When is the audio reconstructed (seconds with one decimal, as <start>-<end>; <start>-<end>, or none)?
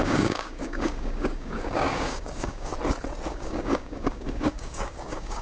0.0-2.7; 3.3-5.4